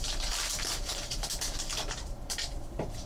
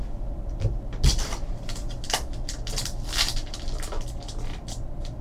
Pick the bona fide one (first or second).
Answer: second